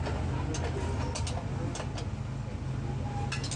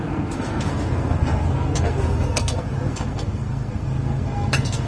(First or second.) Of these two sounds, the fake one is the second